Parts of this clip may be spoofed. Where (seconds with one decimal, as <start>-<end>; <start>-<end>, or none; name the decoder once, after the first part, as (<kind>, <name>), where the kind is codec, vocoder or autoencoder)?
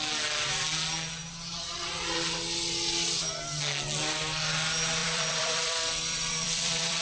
5.0-7.0 (vocoder, BigVGAN v2)